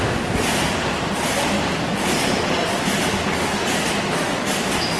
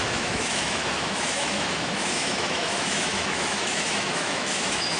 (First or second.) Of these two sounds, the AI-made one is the second